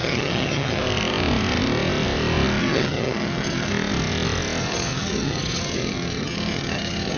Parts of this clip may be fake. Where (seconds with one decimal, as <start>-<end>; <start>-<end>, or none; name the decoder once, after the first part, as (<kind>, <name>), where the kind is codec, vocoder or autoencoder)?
0.0-0.8 (vocoder, HiFi-GAN); 2.6-3.7; 4.6-7.2